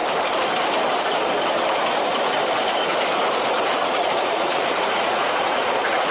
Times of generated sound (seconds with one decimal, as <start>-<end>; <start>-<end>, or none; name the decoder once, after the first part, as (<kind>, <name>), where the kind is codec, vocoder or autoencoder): 3.7-6.1 (vocoder, Vocos)